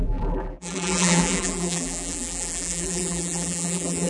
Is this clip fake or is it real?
fake